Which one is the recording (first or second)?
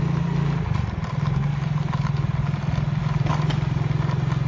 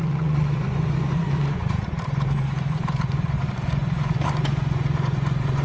first